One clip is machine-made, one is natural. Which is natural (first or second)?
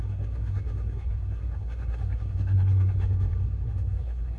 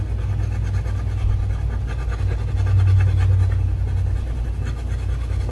second